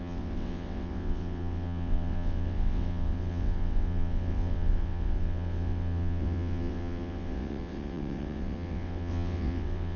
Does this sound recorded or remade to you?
remade